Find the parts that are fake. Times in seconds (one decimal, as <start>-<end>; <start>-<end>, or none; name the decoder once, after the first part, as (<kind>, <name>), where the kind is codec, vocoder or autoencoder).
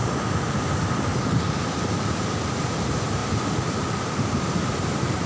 0.5-1.1 (vocoder, BigVGAN v2); 1.7-3.2; 3.8-5.3